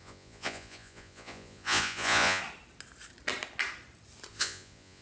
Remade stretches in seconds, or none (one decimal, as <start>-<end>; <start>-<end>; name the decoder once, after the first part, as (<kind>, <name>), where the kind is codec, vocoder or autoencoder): 0.0-2.4 (vocoder, Vocos); 4.3-5.0